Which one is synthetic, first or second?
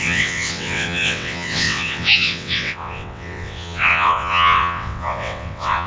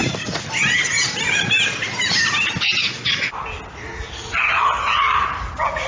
first